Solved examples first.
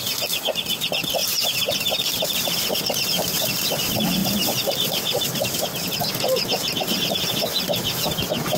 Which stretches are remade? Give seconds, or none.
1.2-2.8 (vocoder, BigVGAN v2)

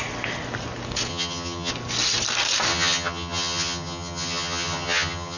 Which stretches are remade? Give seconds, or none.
1.1-1.7 (vocoder, HiFi-GAN); 2.7-5.4

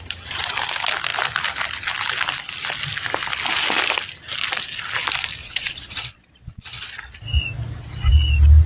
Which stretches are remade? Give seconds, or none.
5.4-7.2 (vocoder, Vocos)